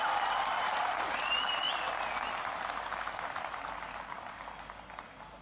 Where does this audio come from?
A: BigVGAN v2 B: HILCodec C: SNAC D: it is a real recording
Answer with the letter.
D